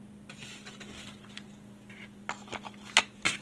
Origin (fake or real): real